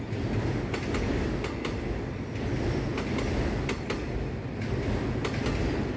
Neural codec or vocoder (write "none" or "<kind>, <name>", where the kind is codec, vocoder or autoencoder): none